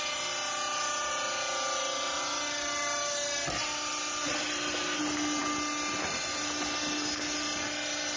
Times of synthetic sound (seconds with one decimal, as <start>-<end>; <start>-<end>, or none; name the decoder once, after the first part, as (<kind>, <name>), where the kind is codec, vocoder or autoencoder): none